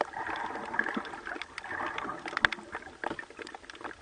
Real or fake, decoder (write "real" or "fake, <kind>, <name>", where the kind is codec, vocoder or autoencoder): real